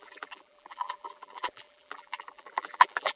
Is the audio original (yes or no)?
no